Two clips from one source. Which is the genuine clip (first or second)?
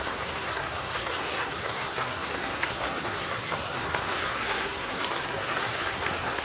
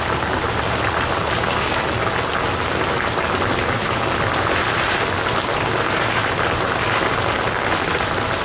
second